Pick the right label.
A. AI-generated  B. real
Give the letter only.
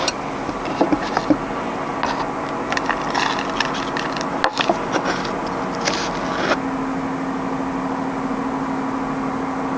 B